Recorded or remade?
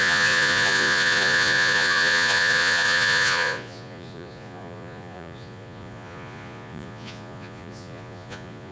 remade